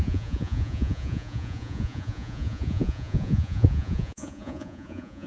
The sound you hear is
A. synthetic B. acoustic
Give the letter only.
A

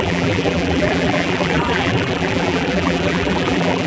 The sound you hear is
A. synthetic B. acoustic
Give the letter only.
A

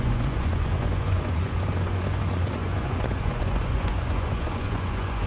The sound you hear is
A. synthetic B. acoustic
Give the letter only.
A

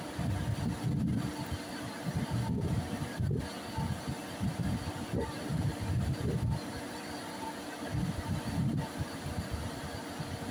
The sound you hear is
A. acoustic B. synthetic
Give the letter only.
A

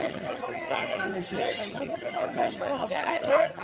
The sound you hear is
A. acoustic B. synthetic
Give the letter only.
B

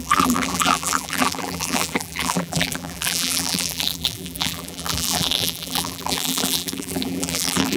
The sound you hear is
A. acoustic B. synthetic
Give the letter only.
B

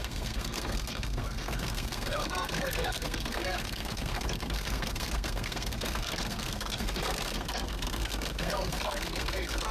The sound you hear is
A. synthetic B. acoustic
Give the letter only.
A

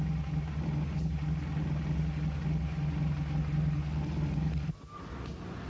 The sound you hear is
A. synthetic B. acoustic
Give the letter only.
B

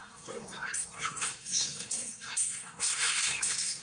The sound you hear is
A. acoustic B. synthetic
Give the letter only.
B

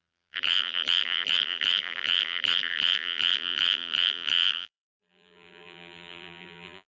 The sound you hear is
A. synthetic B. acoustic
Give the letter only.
A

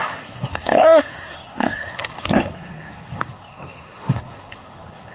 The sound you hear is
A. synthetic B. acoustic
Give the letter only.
A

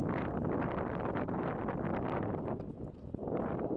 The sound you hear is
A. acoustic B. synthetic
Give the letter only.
B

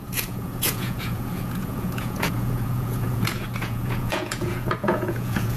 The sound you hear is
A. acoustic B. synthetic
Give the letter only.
B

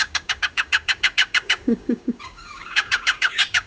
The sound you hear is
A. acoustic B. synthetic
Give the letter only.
B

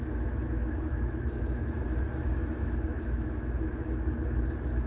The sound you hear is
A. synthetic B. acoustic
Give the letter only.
A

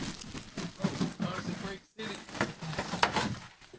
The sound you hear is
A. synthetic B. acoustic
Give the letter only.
B